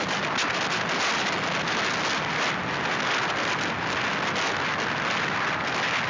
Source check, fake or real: real